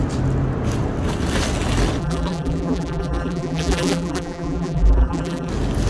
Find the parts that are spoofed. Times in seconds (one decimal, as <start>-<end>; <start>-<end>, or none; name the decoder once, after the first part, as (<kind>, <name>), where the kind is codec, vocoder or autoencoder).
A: 2.0-5.5 (vocoder, BigVGAN v2)